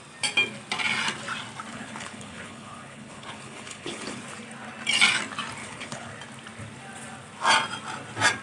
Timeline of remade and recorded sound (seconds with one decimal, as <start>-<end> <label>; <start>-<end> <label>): 0.0-1.7 recorded; 1.7-4.2 remade; 4.2-5.6 recorded; 5.6-6.1 remade; 6.1-8.4 recorded